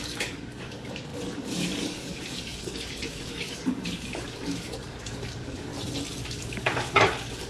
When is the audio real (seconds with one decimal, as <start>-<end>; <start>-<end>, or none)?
5.7-6.2

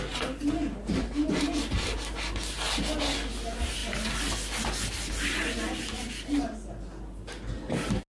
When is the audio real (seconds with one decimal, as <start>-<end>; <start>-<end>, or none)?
0.0-8.1

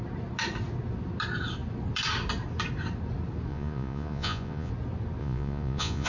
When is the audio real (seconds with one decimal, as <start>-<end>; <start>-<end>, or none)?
0.0-3.5; 4.7-5.2

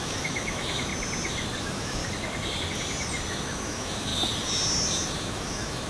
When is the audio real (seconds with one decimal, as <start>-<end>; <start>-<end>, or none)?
0.9-1.6; 2.0-3.3; 4.1-5.1

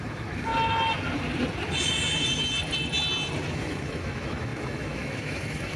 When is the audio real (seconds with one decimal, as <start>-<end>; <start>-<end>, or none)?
0.5-3.5

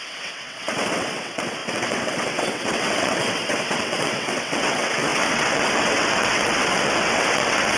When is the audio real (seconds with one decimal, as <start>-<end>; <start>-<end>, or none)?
none

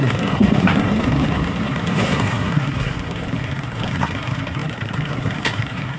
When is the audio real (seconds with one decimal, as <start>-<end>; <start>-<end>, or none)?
none